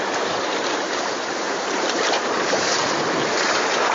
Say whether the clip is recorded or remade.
remade